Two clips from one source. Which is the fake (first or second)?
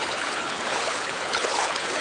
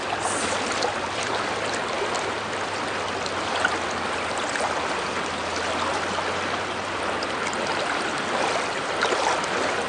first